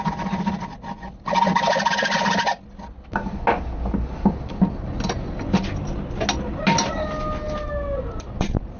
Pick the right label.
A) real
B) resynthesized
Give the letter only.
A